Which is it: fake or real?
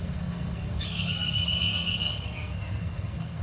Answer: fake